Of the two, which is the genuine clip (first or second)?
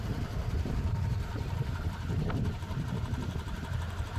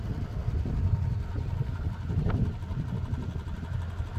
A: second